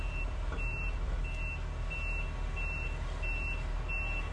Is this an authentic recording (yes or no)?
yes